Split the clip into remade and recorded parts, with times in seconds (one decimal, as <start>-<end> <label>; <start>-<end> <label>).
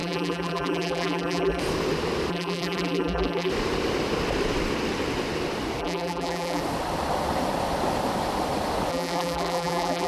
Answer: 0.0-1.6 remade; 1.6-2.3 recorded; 2.3-3.5 remade; 3.5-5.8 recorded; 5.8-6.6 remade; 6.6-8.9 recorded; 8.9-10.1 remade